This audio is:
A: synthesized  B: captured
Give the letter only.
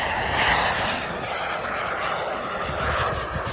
B